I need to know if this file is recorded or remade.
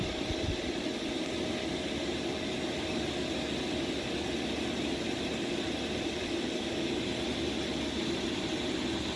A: recorded